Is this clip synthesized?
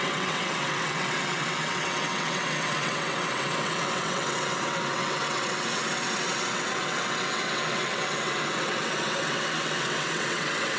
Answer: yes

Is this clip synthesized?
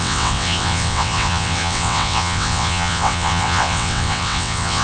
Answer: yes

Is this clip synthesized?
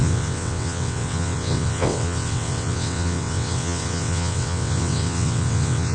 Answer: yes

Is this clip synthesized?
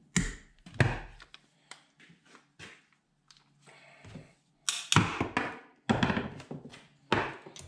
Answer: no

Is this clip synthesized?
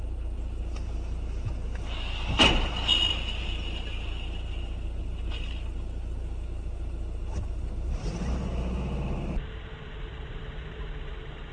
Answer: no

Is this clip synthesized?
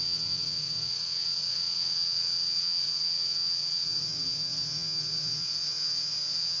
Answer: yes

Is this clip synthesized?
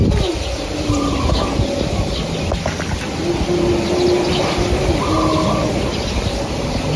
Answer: no